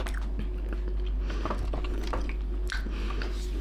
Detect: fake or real real